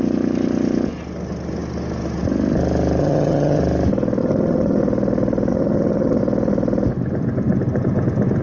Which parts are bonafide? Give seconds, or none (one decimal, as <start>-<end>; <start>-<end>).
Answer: 0.0-3.0; 3.6-4.2; 4.8-5.5; 6.2-8.4

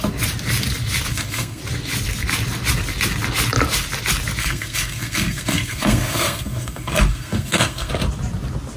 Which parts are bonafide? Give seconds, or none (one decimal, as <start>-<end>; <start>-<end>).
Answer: 0.0-1.1; 1.6-4.4; 7.9-8.8

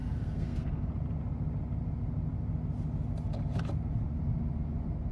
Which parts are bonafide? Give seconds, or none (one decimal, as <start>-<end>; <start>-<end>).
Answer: 0.9-5.1

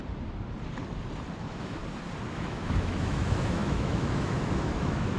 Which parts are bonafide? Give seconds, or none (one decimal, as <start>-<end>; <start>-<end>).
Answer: 0.0-1.4; 1.8-2.3